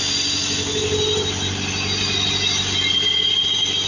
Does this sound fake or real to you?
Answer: real